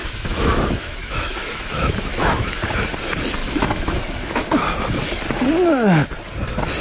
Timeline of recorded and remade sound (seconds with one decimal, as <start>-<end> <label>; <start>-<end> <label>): 0.0-2.8 remade; 2.8-3.4 recorded; 3.4-5.1 remade; 5.1-6.8 recorded